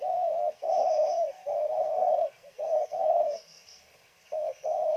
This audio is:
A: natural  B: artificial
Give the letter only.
B